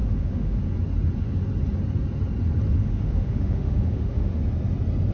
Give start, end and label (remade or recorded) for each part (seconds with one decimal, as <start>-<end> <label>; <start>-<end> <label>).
0.0-0.6 remade; 0.6-2.8 recorded; 2.8-4.4 remade; 4.4-5.1 recorded